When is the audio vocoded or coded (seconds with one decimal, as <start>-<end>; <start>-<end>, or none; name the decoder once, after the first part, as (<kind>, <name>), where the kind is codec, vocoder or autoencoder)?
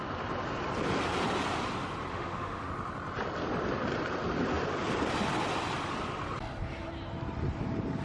2.1-2.7 (autoencoder, DAC-VAE)